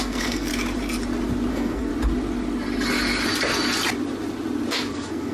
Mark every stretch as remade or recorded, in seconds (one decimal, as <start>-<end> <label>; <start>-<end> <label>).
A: 0.0-0.5 remade; 0.5-1.5 recorded; 1.5-1.9 remade; 1.9-4.7 recorded; 4.7-5.3 remade